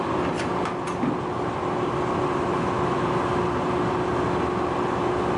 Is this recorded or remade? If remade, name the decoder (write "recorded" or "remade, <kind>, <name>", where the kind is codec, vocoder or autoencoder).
recorded